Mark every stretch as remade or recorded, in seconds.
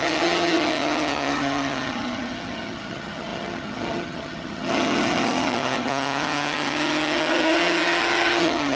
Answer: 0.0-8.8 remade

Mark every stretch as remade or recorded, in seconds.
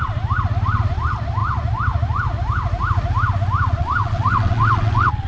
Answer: 0.0-3.8 recorded; 3.8-5.3 remade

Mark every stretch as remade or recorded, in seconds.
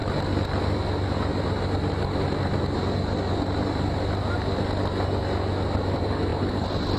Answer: 0.0-7.0 recorded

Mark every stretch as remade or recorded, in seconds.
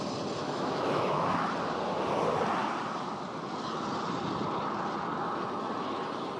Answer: 0.0-0.4 recorded; 0.4-1.5 remade; 1.5-6.4 recorded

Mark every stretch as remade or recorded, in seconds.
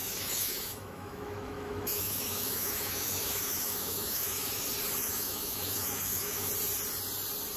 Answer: 0.0-4.6 remade; 4.6-5.0 recorded; 5.0-6.5 remade; 6.5-7.6 recorded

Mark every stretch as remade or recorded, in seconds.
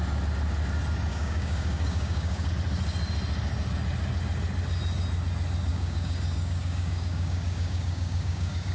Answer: 0.0-1.1 recorded; 1.1-2.5 remade; 2.5-5.7 recorded; 5.7-8.7 remade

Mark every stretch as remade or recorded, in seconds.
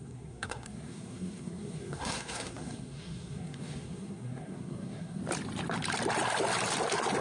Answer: 0.0-5.2 remade; 5.2-7.2 recorded